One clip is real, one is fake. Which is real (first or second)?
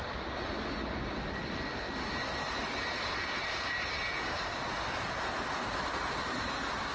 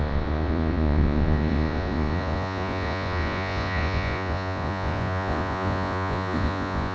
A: first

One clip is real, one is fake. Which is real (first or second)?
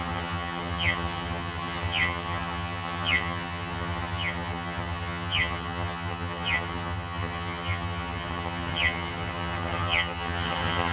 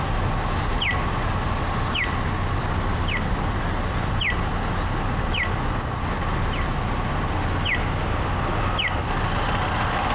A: second